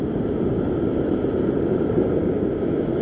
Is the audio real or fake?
real